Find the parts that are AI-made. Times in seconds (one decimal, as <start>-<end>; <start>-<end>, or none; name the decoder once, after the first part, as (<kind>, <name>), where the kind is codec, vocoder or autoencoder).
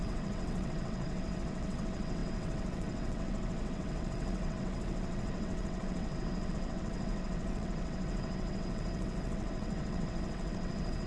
0.0-11.1 (vocoder, WaveNeXt)